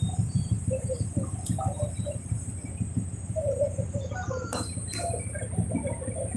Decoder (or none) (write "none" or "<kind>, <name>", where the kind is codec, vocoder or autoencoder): none